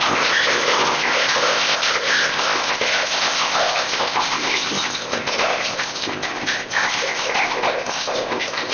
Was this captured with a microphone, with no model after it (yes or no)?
no